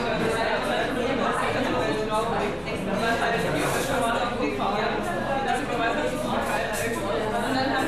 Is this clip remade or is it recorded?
recorded